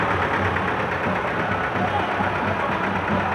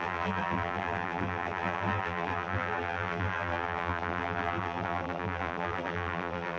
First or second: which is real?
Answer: first